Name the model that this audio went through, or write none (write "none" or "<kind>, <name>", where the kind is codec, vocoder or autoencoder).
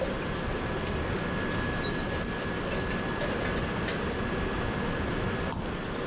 none